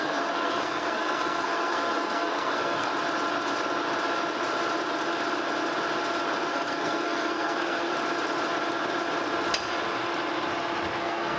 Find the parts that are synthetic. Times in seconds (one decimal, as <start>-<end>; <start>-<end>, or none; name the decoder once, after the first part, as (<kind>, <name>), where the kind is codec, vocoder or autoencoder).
0.0-2.9 (codec, SNAC); 6.5-7.9; 11.0-11.4